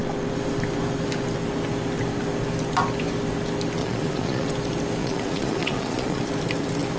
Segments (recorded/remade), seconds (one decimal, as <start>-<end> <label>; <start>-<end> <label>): 0.0-3.8 recorded; 3.8-4.5 remade; 4.5-5.0 recorded; 5.0-6.2 remade; 6.2-7.0 recorded